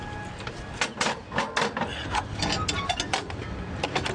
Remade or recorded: recorded